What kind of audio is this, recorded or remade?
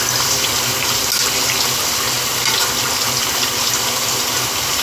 recorded